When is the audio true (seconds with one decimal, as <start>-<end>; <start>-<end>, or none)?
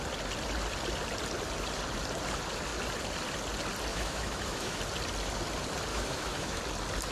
0.0-3.9; 4.8-5.9; 6.6-7.1